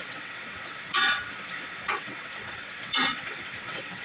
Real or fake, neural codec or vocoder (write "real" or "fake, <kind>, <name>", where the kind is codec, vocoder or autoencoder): fake, vocoder, WaveNeXt